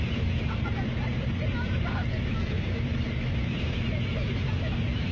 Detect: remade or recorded recorded